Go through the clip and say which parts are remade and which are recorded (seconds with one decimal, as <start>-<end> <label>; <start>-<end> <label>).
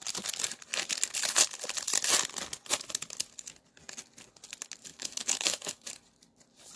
0.0-4.9 recorded; 4.9-5.9 remade; 5.9-6.8 recorded